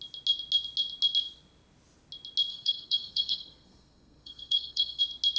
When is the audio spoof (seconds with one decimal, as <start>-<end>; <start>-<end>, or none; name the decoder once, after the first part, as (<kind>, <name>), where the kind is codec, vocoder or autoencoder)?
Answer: 2.5-5.0 (codec, SNAC)